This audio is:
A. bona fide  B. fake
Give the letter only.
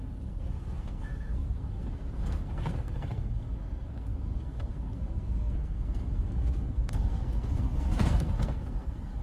B